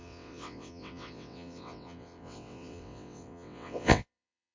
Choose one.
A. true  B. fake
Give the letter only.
B